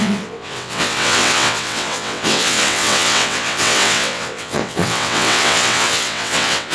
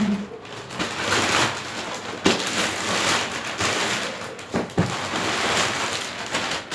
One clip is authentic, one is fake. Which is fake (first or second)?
first